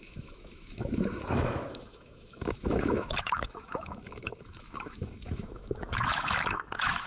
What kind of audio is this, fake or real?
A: fake